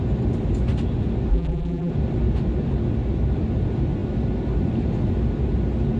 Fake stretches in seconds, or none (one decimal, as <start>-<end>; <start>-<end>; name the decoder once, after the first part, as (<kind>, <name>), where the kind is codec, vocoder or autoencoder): 1.3-1.9 (vocoder, BigVGAN v2)